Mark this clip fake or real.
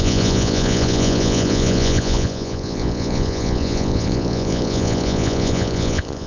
fake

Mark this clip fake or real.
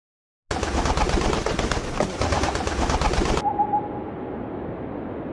real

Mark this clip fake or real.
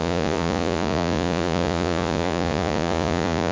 fake